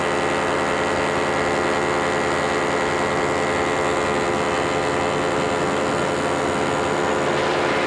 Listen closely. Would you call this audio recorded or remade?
recorded